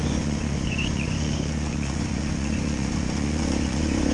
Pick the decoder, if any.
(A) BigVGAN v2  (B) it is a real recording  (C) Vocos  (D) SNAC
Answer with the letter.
C